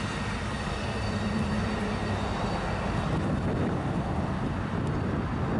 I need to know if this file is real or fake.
real